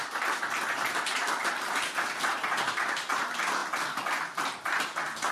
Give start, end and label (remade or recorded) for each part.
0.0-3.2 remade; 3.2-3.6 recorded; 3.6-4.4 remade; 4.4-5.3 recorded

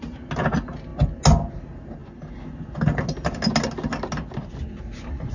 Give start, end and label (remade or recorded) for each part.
0.0-5.3 recorded

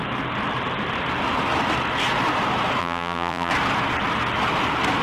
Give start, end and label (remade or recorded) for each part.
0.0-2.8 recorded; 2.8-3.5 remade; 3.5-5.0 recorded

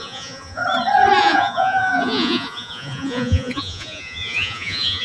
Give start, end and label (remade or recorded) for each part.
0.0-0.6 remade; 0.6-1.2 recorded; 1.2-5.0 remade